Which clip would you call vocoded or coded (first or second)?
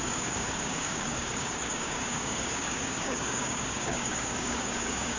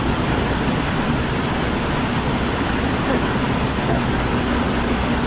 first